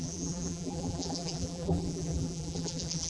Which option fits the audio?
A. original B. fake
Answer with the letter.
B